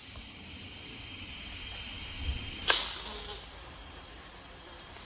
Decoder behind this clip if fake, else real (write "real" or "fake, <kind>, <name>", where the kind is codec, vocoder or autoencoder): real